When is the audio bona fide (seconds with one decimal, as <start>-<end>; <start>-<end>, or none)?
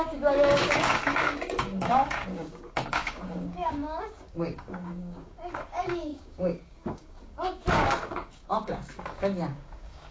none